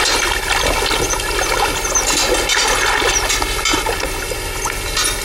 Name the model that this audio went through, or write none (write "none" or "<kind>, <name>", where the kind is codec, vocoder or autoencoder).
none